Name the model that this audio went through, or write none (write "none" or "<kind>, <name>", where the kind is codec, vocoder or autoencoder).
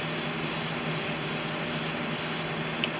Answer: none